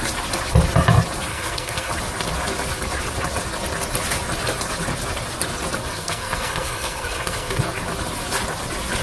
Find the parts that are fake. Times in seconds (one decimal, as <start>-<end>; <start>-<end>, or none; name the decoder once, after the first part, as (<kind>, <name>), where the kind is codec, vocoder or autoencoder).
1.3-1.9 (codec, SNAC); 5.8-7.6